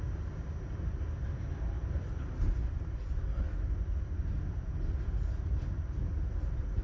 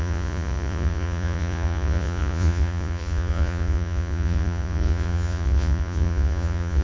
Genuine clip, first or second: first